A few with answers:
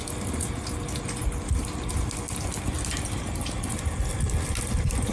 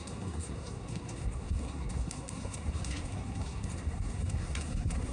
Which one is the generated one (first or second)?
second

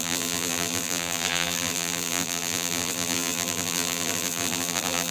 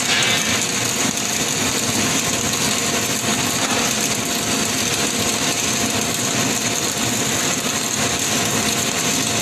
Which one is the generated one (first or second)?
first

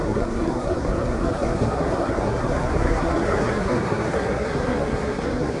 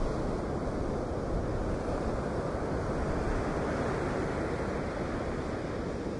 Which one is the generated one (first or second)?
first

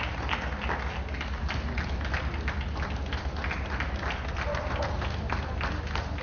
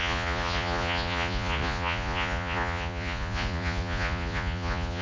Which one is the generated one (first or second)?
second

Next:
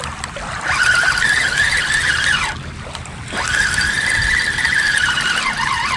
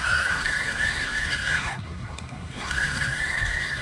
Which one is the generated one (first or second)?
second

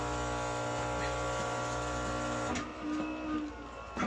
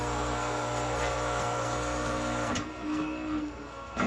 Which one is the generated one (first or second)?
second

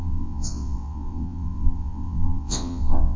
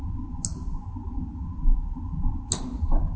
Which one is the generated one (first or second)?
first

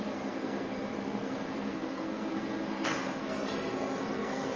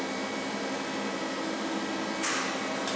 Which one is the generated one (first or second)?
first